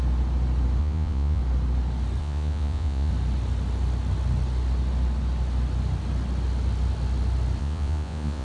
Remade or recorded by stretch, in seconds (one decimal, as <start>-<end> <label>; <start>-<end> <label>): 0.0-0.8 recorded; 0.8-1.4 remade; 1.4-2.2 recorded; 2.2-3.1 remade; 3.1-7.6 recorded; 7.6-8.4 remade